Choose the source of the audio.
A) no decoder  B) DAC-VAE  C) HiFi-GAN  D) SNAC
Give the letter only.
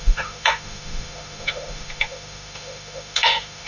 B